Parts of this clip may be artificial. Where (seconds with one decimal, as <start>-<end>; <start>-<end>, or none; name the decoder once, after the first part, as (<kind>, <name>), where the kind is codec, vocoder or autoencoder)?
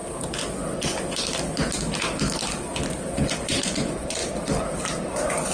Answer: 3.3-4.2 (vocoder, Vocos); 5.1-5.5